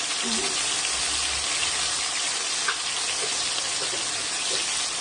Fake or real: real